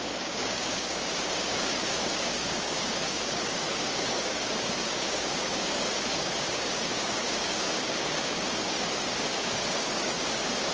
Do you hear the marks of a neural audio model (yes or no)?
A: yes